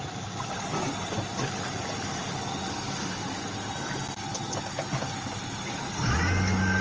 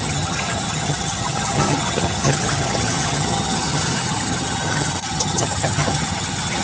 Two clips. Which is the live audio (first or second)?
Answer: first